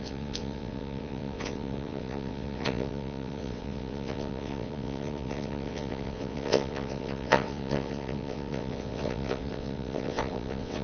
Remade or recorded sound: remade